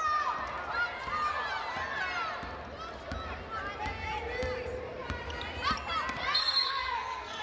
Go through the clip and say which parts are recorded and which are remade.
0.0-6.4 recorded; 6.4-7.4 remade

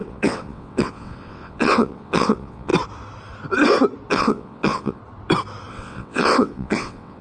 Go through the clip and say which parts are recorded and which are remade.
0.0-2.7 remade; 2.7-4.1 recorded; 4.1-5.0 remade; 5.0-5.7 recorded; 5.7-7.2 remade

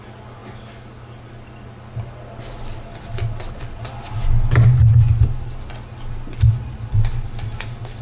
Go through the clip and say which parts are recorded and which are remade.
0.0-8.0 recorded

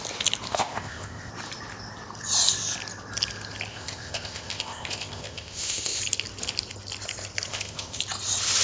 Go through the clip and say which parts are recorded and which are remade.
0.0-0.5 recorded; 0.5-1.3 remade; 1.3-3.7 recorded; 3.7-6.0 remade; 6.0-7.5 recorded; 7.5-8.0 remade; 8.0-8.6 recorded

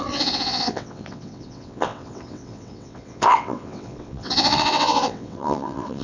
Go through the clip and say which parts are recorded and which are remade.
0.0-6.0 remade